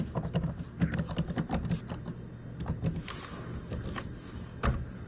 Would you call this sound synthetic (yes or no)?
no